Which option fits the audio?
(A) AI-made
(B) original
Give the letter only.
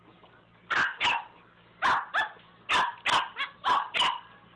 B